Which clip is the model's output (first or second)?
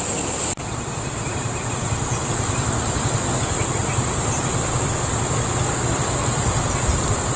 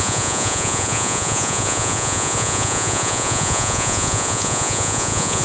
second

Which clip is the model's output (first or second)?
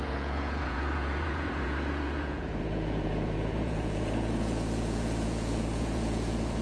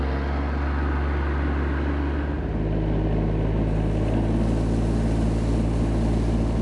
first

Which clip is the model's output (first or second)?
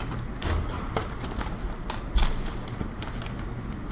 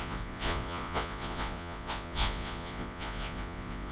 second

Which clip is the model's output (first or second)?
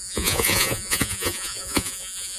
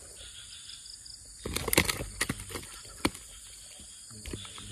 first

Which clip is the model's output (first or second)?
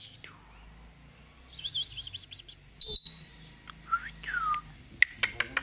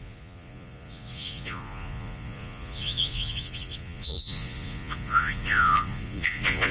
second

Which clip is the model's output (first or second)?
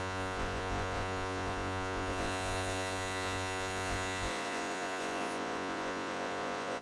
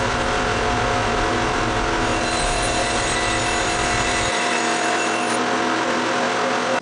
first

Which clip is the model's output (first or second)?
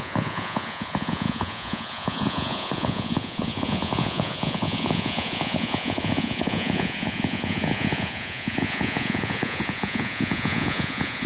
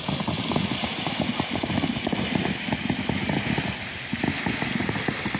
first